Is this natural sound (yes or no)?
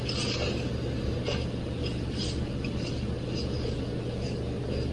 yes